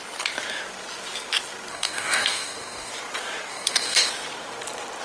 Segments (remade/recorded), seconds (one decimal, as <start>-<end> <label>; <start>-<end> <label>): 0.0-1.7 recorded; 1.7-2.9 remade; 2.9-3.5 recorded; 3.5-4.1 remade; 4.1-5.0 recorded